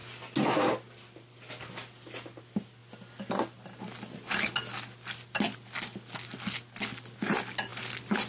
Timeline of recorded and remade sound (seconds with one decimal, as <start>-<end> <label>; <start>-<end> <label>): 0.0-8.3 recorded